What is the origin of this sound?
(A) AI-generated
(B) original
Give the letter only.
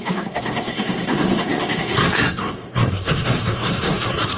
A